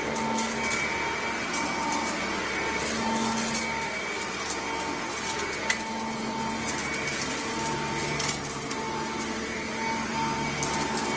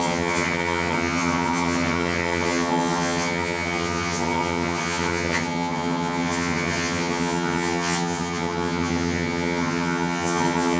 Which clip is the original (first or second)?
first